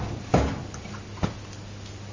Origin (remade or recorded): recorded